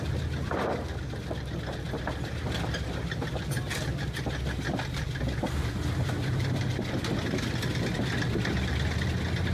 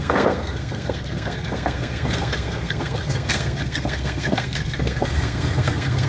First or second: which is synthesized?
second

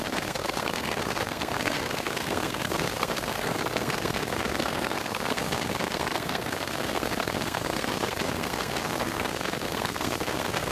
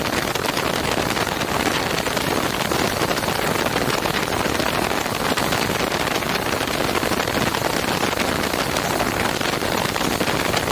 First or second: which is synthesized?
first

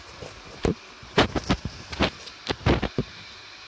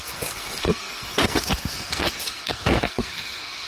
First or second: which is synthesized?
second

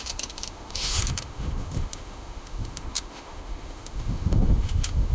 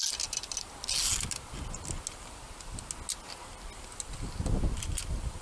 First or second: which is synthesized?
first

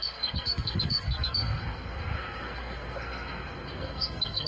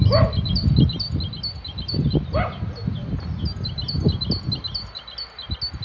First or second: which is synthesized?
first